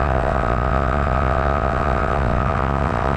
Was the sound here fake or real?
fake